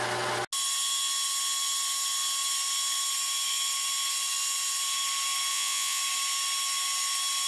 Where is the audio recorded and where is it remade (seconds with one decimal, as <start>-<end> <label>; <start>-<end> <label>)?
0.0-5.5 recorded; 5.5-6.0 remade; 6.0-7.5 recorded